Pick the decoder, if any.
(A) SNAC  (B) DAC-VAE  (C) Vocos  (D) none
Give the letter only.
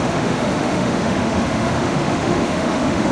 B